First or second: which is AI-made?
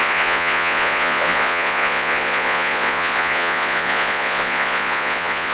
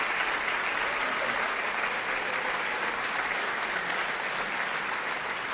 first